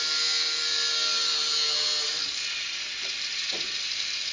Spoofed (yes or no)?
no